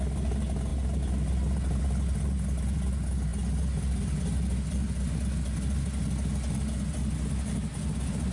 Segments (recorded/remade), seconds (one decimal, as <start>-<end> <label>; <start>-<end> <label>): 0.0-8.3 recorded